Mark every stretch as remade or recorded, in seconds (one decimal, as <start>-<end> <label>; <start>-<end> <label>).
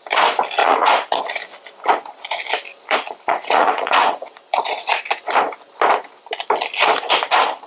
0.0-0.6 recorded; 0.6-1.2 remade; 1.2-2.7 recorded; 2.7-5.0 remade; 5.0-7.7 recorded